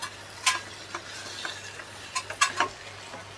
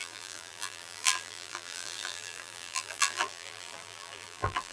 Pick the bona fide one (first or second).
first